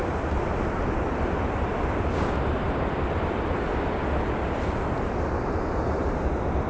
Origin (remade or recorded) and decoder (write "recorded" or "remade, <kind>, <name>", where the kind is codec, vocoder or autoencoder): remade, vocoder, BigVGAN v2